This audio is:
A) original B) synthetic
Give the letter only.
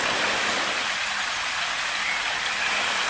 A